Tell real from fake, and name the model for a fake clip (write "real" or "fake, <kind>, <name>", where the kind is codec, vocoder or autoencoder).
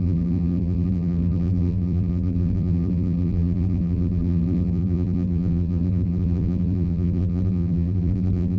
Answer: fake, vocoder, BigVGAN v2